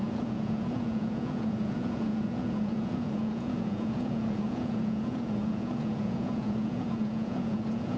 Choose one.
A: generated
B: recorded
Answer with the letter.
A